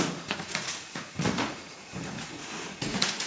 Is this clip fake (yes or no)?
yes